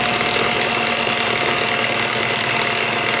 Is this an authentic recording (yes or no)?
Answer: yes